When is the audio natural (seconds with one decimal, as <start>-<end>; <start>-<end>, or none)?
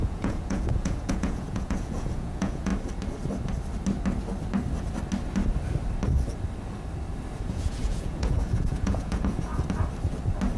2.7-7.4; 9.5-10.6